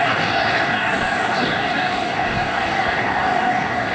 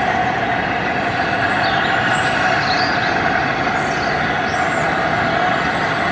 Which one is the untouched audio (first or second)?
second